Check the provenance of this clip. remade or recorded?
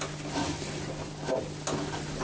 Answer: recorded